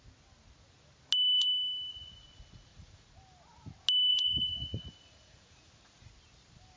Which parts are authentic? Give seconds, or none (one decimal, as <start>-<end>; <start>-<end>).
0.0-1.9; 3.1-4.1; 6.1-6.8